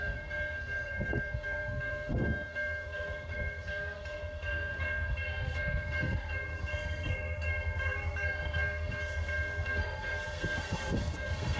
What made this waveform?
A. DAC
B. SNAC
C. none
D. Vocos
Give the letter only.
B